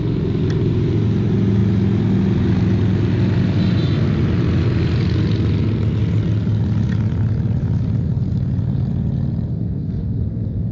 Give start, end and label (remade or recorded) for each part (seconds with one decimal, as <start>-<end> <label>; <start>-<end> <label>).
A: 0.0-9.5 recorded; 9.5-10.7 remade